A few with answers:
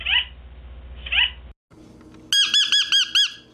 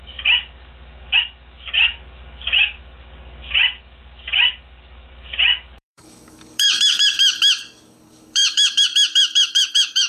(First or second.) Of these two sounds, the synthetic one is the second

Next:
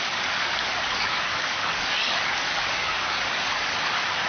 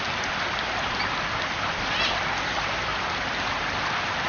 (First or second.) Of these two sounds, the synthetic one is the first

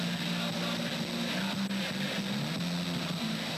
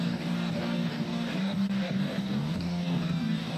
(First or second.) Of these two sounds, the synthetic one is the second